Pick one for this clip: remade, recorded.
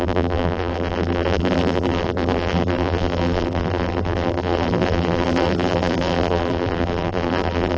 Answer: remade